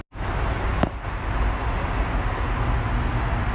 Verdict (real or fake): real